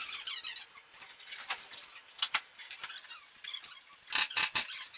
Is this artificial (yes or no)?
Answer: no